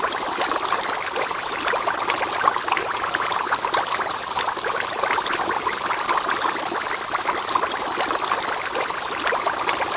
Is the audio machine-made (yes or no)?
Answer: no